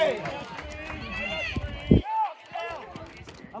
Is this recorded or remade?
recorded